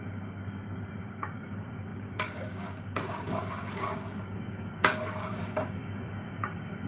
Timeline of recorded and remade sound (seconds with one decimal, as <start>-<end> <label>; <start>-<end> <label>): 0.0-0.4 remade; 0.4-1.0 recorded; 1.0-6.9 remade